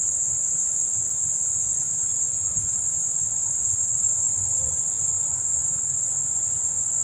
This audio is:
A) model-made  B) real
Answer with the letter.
B